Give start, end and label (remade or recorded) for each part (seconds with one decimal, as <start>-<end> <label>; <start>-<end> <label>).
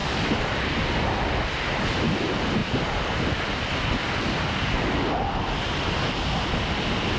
0.0-7.2 recorded